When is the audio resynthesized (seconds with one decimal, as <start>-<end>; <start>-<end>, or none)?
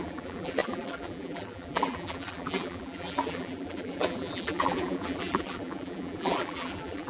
0.0-7.1